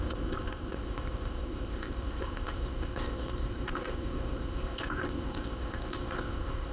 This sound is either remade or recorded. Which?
remade